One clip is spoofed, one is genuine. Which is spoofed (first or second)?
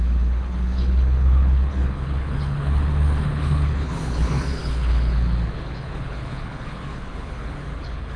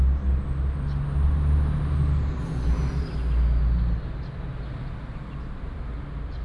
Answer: first